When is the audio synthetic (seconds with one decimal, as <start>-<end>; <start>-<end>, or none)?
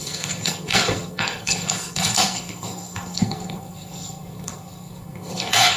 0.0-5.8